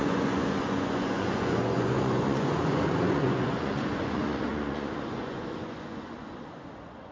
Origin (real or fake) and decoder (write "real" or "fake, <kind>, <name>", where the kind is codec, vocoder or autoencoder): fake, vocoder, Vocos